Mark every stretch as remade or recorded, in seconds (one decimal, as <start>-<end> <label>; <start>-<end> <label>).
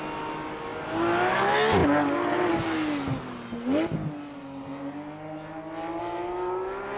0.0-7.0 recorded